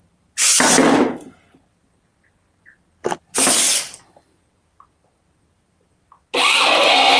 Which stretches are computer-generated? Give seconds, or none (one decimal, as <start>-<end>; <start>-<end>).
none